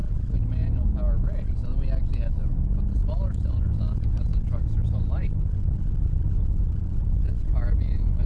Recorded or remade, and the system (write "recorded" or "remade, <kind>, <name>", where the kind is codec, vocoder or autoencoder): recorded